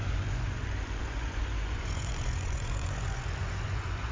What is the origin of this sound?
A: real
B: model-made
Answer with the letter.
B